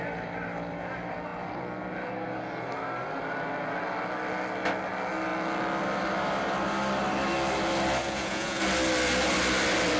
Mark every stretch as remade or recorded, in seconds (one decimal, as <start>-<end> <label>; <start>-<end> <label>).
0.0-8.0 recorded; 8.0-8.6 remade; 8.6-10.0 recorded